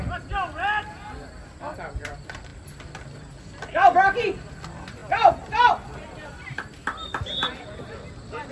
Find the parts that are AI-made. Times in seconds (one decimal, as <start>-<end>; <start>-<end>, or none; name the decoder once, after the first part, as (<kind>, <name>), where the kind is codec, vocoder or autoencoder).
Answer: none